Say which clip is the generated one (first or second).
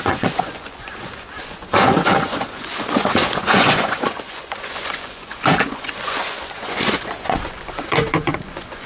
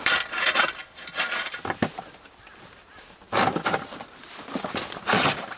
first